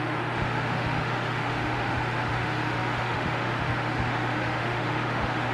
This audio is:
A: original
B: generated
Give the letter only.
B